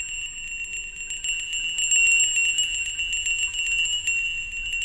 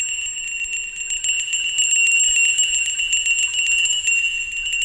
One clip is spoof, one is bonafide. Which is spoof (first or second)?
second